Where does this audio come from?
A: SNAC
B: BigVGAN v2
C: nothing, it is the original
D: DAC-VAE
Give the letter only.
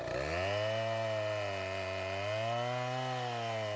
C